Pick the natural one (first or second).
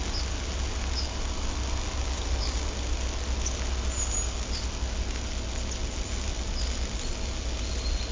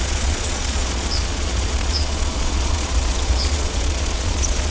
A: first